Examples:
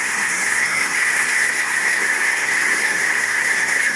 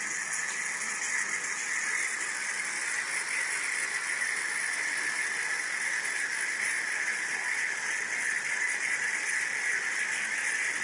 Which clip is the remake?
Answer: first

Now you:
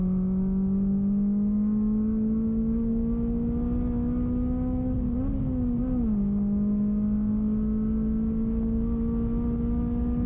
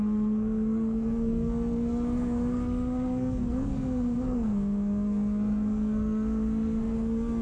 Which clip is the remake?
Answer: second